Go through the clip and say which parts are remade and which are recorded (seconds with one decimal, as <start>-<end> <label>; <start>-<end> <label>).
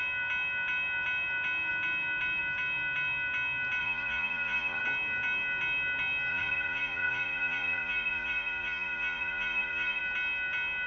0.0-3.8 recorded; 3.8-4.8 remade; 4.8-6.3 recorded; 6.3-10.0 remade; 10.0-10.9 recorded